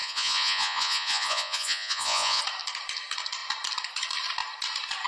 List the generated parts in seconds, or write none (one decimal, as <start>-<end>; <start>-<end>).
0.0-2.4